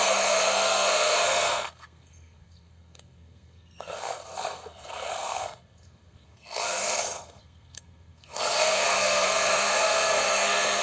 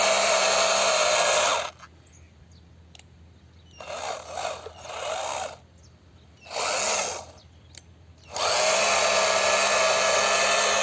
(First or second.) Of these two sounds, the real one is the second